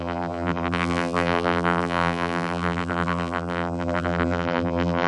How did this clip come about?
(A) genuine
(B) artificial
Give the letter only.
B